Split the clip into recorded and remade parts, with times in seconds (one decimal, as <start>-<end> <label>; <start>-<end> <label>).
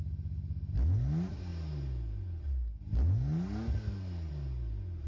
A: 0.0-5.1 recorded